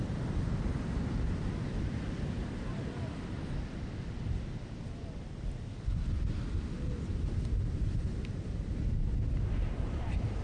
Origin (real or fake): real